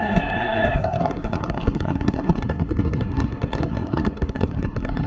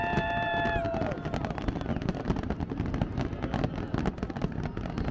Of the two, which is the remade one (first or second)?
first